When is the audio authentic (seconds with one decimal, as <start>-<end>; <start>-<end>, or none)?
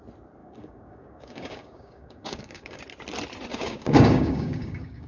0.0-0.4; 2.8-3.5